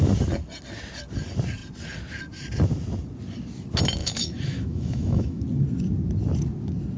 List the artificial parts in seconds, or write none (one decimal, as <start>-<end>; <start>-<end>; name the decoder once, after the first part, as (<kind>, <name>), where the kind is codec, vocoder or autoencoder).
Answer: 4.0-5.4 (autoencoder, DAC-VAE)